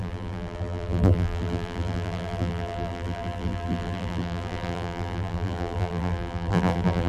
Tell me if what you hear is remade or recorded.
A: remade